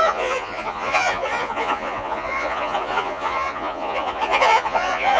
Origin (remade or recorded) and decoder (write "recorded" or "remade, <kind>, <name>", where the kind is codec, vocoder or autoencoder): remade, vocoder, Vocos